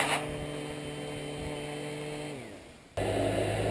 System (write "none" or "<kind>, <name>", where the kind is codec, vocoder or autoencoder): none